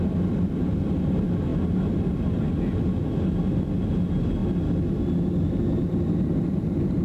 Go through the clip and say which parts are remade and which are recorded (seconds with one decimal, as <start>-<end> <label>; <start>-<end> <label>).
0.0-1.5 recorded; 1.5-2.5 remade; 2.5-7.0 recorded